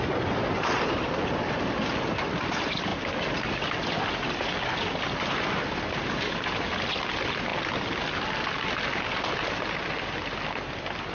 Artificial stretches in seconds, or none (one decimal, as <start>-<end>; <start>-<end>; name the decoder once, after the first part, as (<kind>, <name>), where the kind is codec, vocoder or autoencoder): none